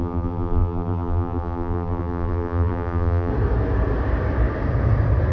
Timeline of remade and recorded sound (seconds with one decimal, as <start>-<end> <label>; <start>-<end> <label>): 0.0-3.3 remade; 3.3-5.3 recorded